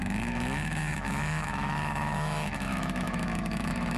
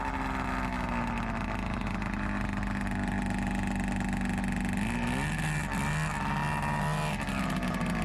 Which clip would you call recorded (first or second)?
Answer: second